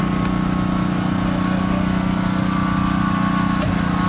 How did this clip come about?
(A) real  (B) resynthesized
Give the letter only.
A